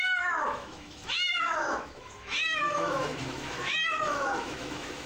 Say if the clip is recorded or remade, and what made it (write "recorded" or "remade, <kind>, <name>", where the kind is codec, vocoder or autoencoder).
remade, autoencoder, DAC-VAE